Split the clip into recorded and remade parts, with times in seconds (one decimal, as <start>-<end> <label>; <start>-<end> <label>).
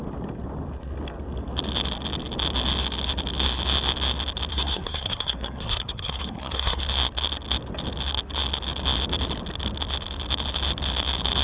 0.0-4.5 recorded; 4.5-6.8 remade; 6.8-11.4 recorded